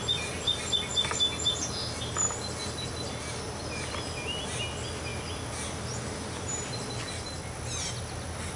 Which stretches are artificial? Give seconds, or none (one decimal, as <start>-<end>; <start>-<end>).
none